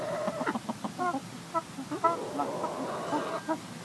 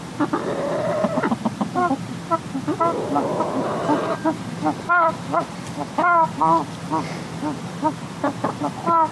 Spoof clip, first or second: second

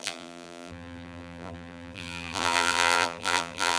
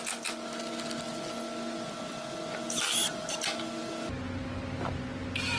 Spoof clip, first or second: first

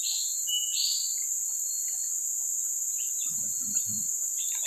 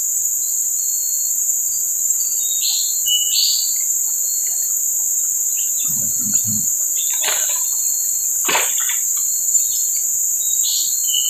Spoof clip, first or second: first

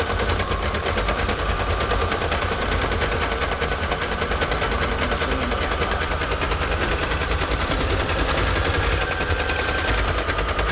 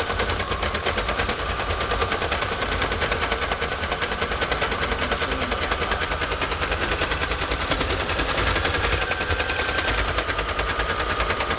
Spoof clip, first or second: second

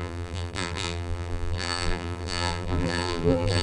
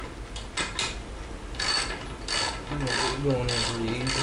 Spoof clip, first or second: first